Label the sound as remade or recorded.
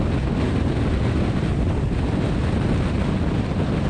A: recorded